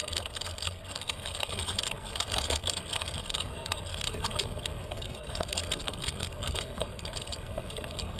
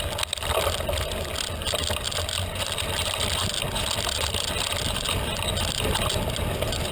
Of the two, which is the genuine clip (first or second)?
second